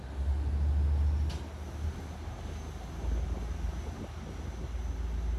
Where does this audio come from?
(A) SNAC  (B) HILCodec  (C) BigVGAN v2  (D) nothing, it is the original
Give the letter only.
D